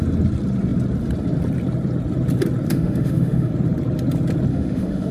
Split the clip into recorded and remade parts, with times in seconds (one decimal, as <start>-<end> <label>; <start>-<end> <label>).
0.0-2.7 recorded; 2.7-3.5 remade; 3.5-4.5 recorded; 4.5-5.1 remade